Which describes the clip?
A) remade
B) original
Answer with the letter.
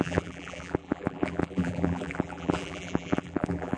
A